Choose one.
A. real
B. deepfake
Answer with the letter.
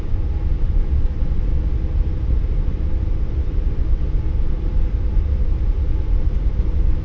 A